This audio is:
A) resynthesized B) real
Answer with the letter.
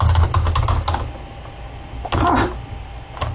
B